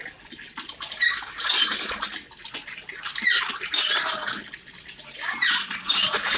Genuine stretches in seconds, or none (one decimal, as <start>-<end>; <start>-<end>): 0.0-0.7; 1.5-4.8